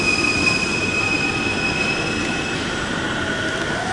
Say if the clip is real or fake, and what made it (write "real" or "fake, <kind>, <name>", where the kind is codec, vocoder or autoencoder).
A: real